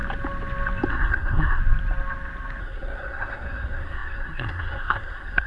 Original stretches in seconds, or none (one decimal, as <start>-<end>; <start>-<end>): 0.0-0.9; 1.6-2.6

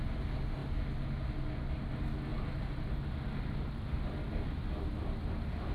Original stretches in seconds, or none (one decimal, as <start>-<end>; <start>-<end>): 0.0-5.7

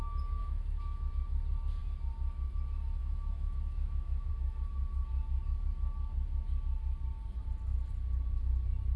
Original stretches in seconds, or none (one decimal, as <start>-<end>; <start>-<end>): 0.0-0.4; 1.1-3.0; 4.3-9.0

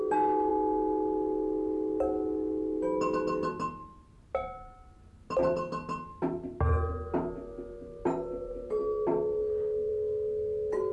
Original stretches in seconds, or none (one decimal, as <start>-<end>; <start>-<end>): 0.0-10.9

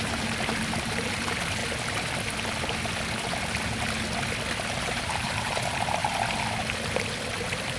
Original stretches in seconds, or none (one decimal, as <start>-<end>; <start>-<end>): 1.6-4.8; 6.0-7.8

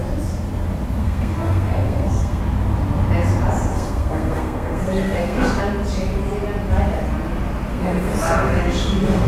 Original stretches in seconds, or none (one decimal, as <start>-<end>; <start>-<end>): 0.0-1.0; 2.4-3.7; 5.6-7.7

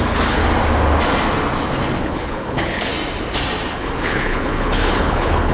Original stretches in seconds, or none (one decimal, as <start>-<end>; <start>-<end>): 0.4-2.0; 2.9-3.7

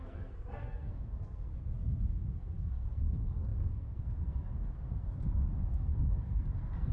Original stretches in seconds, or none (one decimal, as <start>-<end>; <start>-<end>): none